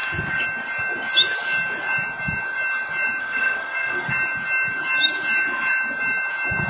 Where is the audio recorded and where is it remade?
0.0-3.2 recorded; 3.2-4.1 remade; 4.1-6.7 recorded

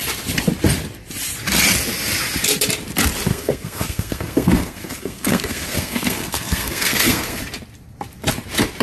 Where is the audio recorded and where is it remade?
0.0-3.3 recorded; 3.3-7.4 remade; 7.4-8.8 recorded

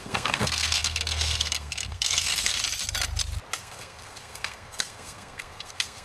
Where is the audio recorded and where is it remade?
0.0-2.5 remade; 2.5-3.6 recorded; 3.6-6.0 remade

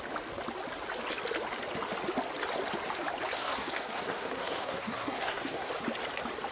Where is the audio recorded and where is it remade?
0.0-3.4 recorded; 3.4-5.7 remade; 5.7-6.5 recorded

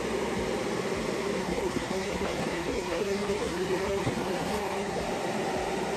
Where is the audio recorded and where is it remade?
0.0-1.4 recorded; 1.4-5.0 remade; 5.0-6.0 recorded

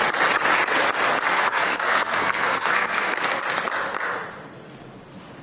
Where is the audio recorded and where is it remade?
0.0-1.3 recorded; 1.3-3.4 remade; 3.4-5.4 recorded

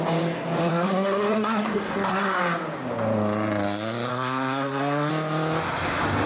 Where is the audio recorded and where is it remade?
0.0-0.6 recorded; 0.6-2.4 remade; 2.4-4.1 recorded; 4.1-5.1 remade; 5.1-6.3 recorded